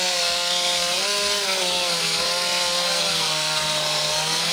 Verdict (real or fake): fake